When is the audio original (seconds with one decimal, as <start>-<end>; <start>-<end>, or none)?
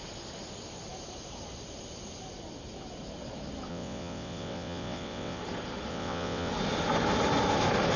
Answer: 0.0-3.7; 5.4-5.9; 6.5-8.0